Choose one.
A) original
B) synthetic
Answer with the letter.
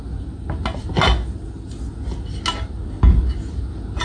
A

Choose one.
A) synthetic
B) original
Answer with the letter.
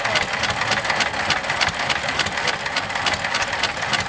B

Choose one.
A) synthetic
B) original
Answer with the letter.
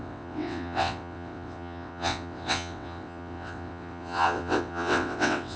A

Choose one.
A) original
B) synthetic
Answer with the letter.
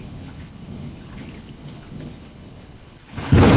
B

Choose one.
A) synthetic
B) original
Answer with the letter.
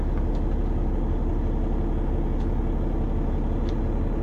B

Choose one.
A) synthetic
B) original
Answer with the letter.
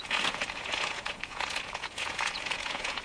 A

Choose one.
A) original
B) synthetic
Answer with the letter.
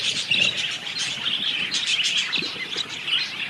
A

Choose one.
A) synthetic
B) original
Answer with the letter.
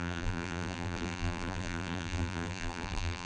A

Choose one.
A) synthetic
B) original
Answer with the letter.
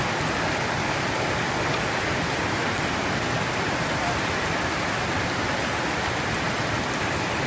B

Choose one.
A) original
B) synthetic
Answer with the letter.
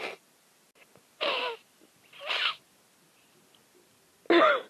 A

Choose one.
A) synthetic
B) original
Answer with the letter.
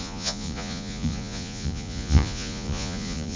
A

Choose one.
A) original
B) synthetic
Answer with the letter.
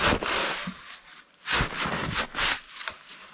A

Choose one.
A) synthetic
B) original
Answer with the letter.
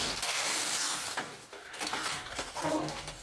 A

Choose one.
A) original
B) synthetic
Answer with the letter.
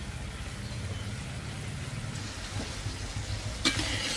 A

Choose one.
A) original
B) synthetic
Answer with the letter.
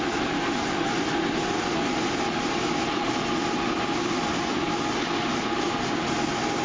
A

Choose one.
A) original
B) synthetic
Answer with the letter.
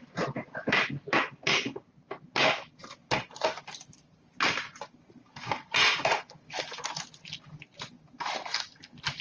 A